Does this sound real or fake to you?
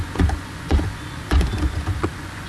fake